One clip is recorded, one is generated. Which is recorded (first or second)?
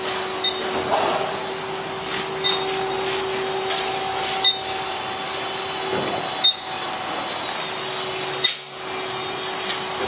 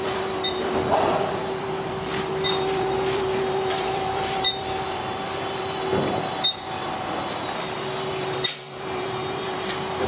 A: first